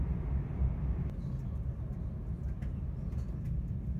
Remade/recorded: recorded